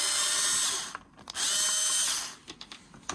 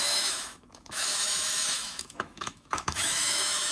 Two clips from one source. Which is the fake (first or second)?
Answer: second